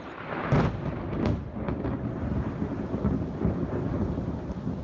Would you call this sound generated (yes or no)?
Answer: no